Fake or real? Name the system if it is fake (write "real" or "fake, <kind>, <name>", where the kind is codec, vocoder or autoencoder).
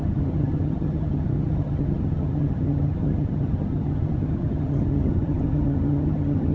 fake, vocoder, HiFi-GAN